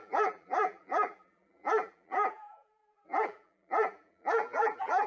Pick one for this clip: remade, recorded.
remade